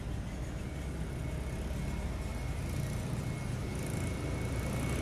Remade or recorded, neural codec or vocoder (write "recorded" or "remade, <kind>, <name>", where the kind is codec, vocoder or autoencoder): recorded